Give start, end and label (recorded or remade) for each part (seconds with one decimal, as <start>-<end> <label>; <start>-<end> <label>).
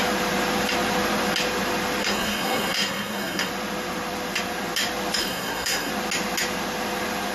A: 0.0-2.0 recorded; 2.0-3.5 remade; 3.5-5.2 recorded; 5.2-5.9 remade; 5.9-7.3 recorded